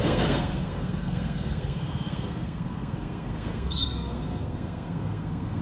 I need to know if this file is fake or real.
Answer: fake